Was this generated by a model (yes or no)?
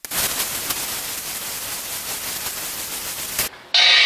no